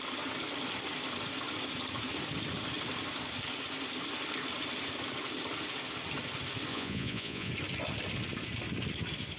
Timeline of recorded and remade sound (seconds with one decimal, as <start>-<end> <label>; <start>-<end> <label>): 0.0-6.7 recorded; 6.7-7.5 remade; 7.5-9.4 recorded